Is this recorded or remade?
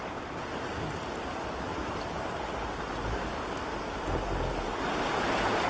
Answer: recorded